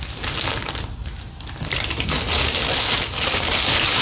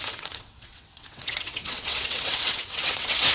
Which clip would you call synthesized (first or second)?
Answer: second